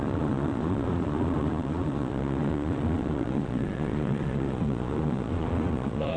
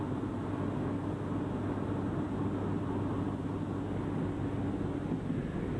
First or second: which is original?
second